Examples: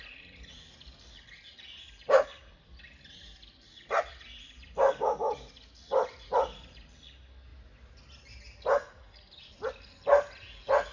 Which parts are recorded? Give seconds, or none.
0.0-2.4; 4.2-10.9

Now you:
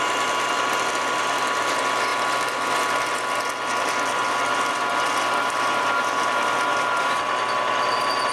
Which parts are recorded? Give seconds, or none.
0.0-8.3

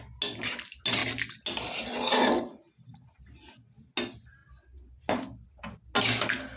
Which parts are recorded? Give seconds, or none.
0.0-6.6

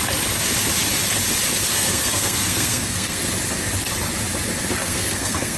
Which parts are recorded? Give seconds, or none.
0.0-1.7; 3.2-4.8

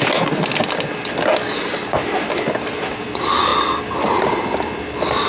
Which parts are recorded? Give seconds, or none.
0.0-5.3

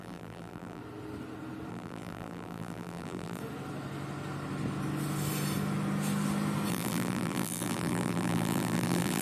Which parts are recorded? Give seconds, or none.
0.8-1.7; 3.4-6.7

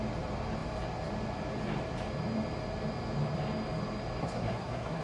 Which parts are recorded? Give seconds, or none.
0.0-4.2

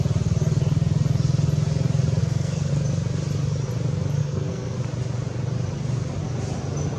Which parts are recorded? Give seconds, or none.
0.0-2.2; 2.7-4.2; 4.8-7.0